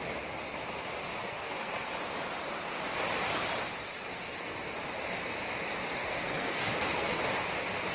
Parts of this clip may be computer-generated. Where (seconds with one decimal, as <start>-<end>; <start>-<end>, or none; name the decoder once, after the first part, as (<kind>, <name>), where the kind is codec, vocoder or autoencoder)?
1.2-1.9 (codec, SNAC); 4.1-4.6; 6.0-7.2